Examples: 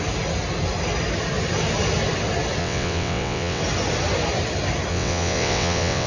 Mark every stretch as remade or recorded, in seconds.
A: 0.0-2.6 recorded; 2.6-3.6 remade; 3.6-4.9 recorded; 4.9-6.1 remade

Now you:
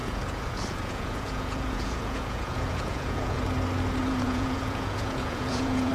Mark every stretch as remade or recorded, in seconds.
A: 0.0-3.4 remade; 3.4-4.0 recorded; 4.0-5.9 remade

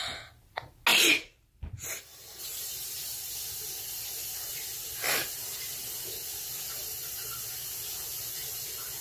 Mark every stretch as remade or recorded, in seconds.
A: 0.0-0.9 recorded; 0.9-3.3 remade; 3.3-9.0 recorded

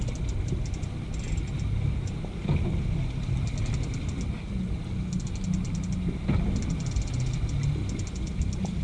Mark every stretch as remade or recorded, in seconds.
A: 0.0-8.8 recorded

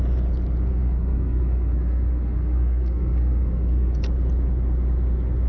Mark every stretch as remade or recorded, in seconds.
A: 0.0-0.7 recorded; 0.7-4.0 remade; 4.0-5.5 recorded